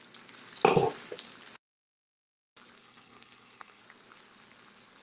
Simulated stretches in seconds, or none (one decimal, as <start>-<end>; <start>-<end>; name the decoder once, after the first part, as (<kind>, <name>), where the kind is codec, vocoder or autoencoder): 2.8-3.8 (codec, SNAC)